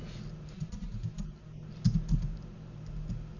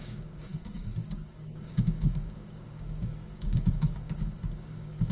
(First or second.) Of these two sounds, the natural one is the first